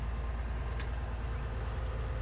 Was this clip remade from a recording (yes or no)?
no